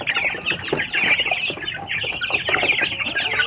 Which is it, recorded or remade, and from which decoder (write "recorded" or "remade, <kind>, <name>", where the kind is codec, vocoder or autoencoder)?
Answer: recorded